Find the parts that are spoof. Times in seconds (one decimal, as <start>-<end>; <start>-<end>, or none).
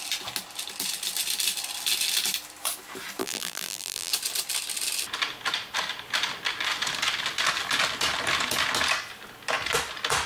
3.2-4.1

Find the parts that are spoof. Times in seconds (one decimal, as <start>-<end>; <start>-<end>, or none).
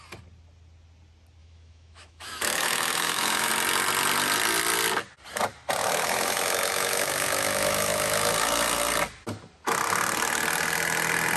1.4-3.5; 5.8-8.3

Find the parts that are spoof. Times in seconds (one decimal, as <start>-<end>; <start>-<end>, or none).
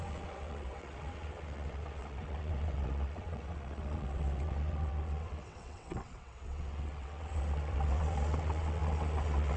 0.0-9.6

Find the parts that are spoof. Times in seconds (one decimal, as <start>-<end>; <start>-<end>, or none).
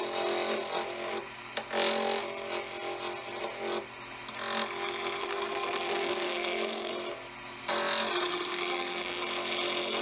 5.2-6.9; 8.3-9.2